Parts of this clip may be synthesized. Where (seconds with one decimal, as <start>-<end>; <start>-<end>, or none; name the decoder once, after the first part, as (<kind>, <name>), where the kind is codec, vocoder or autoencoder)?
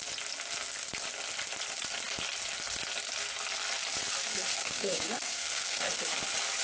4.5-6.0 (codec, SNAC)